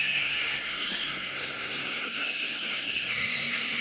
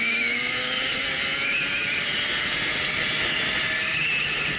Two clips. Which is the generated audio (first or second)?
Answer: first